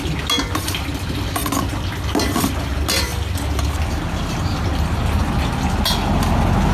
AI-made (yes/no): no